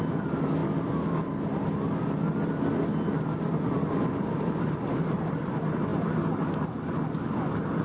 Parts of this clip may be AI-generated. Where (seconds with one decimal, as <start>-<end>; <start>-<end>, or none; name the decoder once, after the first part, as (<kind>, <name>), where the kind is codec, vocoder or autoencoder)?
none